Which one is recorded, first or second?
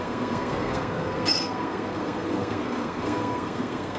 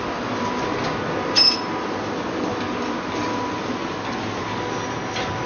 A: second